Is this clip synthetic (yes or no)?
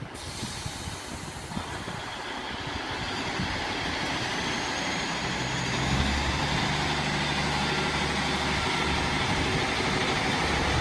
no